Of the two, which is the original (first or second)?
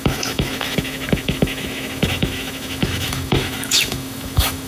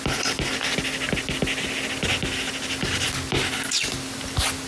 second